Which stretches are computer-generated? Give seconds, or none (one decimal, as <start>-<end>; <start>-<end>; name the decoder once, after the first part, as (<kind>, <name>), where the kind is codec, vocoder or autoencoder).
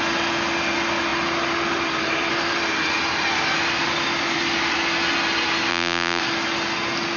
5.7-6.2 (vocoder, BigVGAN v2)